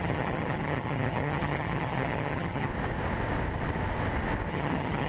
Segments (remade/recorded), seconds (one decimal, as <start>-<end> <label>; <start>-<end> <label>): 0.0-2.7 remade; 2.7-4.5 recorded; 4.5-5.1 remade